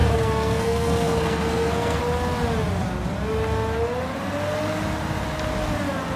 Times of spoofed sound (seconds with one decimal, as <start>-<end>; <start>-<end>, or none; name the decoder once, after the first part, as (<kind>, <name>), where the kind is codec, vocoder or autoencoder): 0.0-2.0 (codec, SNAC)